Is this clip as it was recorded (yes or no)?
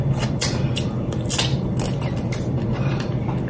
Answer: yes